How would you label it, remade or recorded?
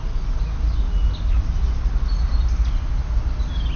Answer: recorded